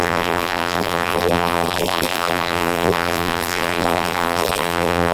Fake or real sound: fake